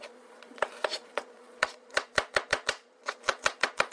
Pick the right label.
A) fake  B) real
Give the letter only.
A